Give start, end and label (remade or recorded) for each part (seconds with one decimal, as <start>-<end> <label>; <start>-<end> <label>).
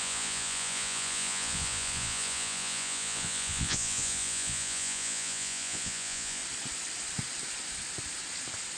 0.0-6.4 remade; 6.4-8.8 recorded